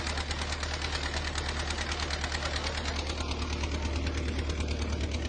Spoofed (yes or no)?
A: no